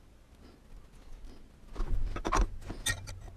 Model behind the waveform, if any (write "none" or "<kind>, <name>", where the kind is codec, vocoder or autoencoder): none